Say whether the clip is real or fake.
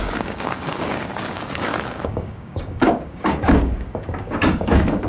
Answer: fake